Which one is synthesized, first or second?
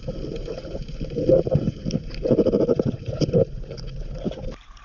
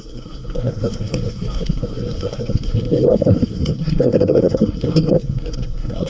second